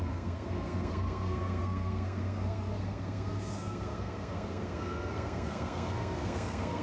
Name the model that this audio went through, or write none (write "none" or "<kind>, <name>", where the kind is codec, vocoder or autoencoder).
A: codec, SNAC